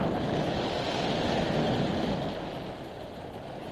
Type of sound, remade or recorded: recorded